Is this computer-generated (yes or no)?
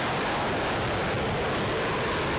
no